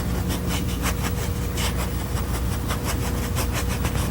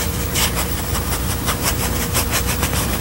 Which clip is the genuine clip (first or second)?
first